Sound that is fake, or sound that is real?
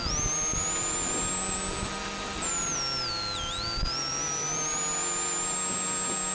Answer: real